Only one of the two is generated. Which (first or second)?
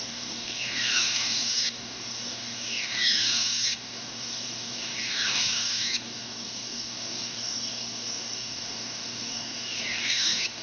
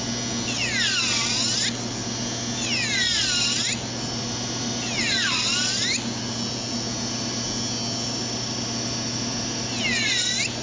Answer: first